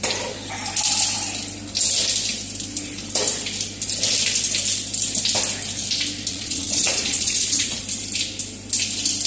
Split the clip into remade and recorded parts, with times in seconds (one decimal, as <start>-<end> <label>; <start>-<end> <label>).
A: 0.0-6.3 recorded; 6.3-7.8 remade; 7.8-9.3 recorded